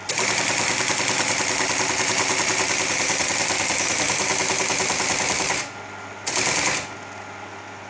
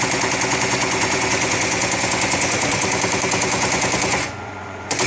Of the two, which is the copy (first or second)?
second